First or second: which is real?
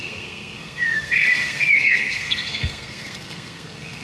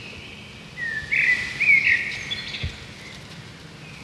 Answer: second